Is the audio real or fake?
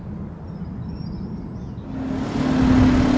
real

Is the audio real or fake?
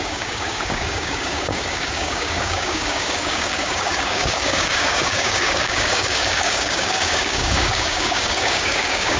fake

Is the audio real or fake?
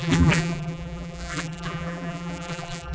fake